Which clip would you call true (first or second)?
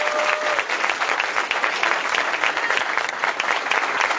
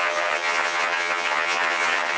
first